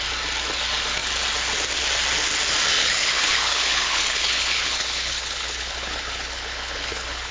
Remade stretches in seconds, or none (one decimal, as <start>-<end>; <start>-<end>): 2.8-7.3